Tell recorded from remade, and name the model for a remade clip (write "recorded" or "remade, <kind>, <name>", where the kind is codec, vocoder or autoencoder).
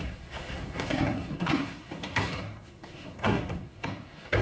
remade, codec, SNAC